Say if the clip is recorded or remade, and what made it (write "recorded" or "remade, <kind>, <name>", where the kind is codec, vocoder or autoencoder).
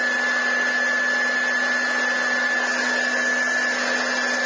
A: recorded